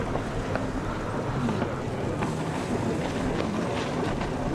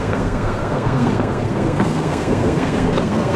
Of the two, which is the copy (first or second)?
second